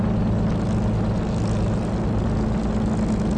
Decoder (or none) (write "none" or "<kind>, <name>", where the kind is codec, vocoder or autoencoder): none